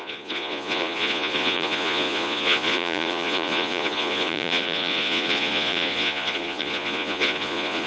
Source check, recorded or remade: remade